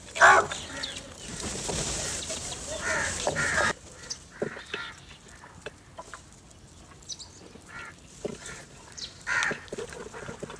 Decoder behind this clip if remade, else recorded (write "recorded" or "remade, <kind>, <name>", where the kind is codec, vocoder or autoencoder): recorded